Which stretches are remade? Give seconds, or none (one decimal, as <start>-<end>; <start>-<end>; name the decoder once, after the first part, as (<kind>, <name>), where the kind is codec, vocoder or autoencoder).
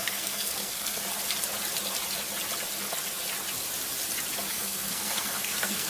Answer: 0.0-1.0 (codec, SNAC); 4.5-5.9